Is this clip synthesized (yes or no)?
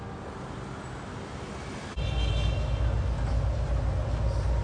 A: no